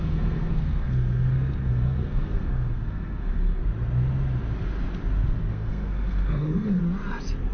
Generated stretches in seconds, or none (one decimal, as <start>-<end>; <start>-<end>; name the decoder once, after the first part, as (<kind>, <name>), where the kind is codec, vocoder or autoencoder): 0.0-3.6 (codec, SNAC); 5.5-6.8